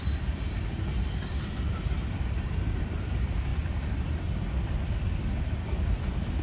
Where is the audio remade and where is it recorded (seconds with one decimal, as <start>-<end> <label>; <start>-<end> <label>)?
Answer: 0.0-3.5 remade; 3.5-5.4 recorded; 5.4-6.4 remade